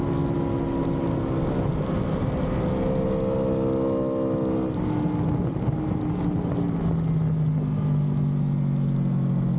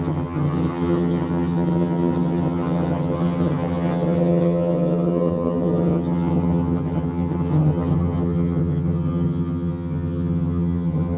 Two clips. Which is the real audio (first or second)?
first